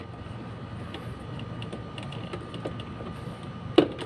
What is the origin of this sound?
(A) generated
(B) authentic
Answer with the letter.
B